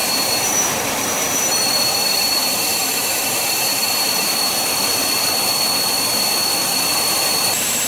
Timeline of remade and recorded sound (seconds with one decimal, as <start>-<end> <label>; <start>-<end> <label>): 0.0-4.5 remade; 4.5-7.9 recorded